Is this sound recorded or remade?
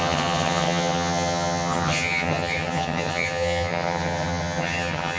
remade